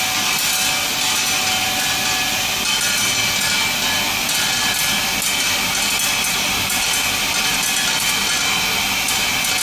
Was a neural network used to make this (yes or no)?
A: no